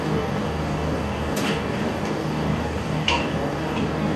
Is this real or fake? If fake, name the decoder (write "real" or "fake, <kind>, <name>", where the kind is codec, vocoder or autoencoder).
fake, codec, DAC